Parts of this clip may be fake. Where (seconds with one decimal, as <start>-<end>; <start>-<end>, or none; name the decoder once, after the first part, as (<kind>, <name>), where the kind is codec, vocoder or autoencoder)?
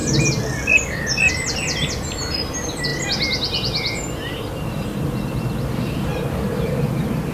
none